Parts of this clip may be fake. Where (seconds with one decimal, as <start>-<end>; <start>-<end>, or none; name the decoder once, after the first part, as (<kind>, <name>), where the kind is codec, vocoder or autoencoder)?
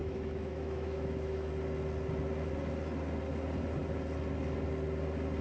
0.0-1.5 (autoencoder, DAC-VAE)